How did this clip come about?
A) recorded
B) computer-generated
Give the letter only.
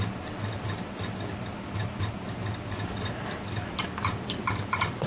A